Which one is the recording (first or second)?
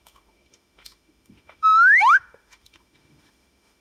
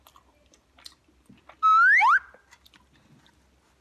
second